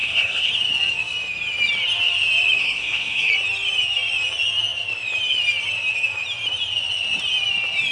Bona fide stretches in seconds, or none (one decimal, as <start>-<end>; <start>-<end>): 0.5-2.6; 3.3-7.9